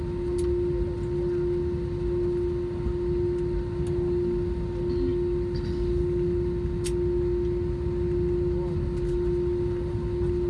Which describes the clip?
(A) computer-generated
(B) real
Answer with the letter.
B